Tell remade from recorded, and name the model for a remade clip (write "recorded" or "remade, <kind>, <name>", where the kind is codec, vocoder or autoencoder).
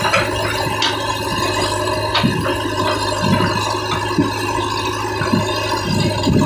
recorded